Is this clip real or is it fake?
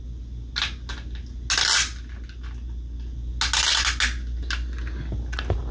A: real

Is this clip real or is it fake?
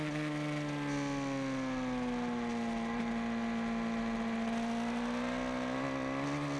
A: real